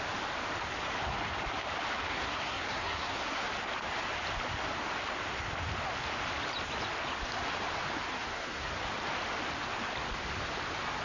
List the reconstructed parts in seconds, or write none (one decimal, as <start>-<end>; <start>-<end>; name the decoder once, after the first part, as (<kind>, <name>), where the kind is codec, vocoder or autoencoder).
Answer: 2.1-3.5 (codec, SNAC); 8.1-8.7